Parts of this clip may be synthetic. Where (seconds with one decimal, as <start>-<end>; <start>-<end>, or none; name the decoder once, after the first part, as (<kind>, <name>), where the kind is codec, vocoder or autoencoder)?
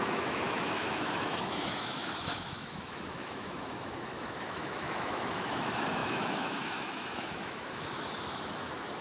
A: 0.0-9.0 (autoencoder, DAC-VAE)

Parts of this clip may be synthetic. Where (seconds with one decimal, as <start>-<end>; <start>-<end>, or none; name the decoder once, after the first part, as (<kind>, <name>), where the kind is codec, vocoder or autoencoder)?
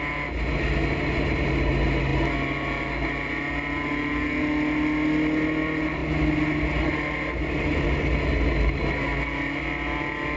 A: none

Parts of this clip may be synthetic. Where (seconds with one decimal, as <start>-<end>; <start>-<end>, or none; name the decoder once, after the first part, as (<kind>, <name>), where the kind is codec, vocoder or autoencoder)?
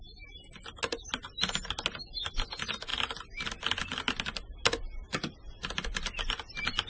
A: none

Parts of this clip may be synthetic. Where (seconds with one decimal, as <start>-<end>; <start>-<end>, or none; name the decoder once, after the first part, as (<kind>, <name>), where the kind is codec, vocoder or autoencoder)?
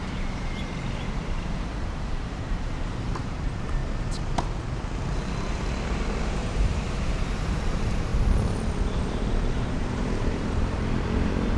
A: 0.0-3.8 (vocoder, BigVGAN v2); 6.2-8.1; 9.0-11.6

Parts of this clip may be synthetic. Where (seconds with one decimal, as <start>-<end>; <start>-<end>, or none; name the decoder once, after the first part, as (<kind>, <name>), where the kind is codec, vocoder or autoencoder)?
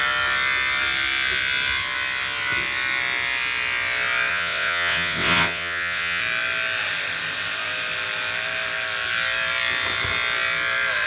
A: 4.3-6.2 (vocoder, WaveNeXt)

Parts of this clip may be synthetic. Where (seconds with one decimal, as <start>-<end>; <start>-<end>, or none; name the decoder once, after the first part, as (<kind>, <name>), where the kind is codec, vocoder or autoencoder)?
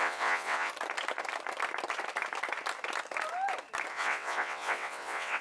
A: 0.0-0.7 (vocoder, WaveNeXt); 3.9-5.4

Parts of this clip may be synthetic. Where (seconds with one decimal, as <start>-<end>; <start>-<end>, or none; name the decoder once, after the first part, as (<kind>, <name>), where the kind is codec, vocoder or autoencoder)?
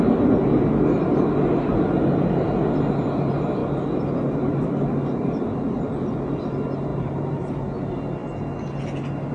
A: 6.9-7.5 (vocoder, BigVGAN v2)